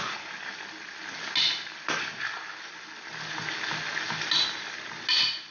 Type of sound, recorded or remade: recorded